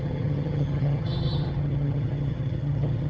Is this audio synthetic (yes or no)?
yes